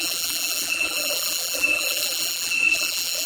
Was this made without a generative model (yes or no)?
no